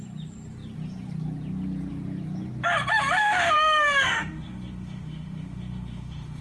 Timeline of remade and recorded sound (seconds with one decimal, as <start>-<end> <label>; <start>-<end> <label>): 0.0-3.2 recorded; 3.2-6.4 remade